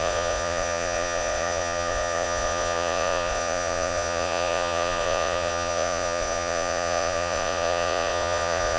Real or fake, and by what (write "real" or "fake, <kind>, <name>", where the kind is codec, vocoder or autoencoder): fake, vocoder, Vocos